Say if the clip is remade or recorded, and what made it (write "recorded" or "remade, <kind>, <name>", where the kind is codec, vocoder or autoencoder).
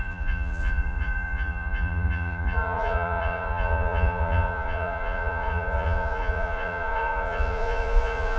remade, vocoder, Vocos